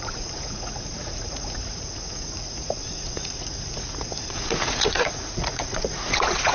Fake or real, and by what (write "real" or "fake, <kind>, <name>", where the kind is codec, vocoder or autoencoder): fake, vocoder, Vocos